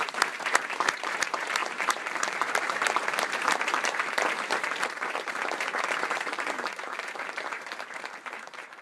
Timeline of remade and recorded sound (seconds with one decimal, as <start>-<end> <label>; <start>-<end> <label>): 0.0-8.8 remade